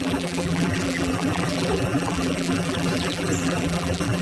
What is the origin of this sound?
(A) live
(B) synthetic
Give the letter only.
B